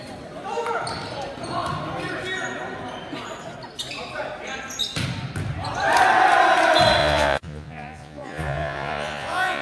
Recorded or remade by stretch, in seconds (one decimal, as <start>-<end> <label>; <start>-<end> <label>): 0.0-7.0 recorded; 7.0-9.6 remade